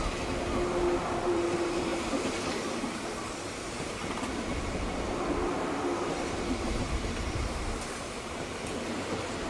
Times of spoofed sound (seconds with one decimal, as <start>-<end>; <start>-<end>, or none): 1.0-9.5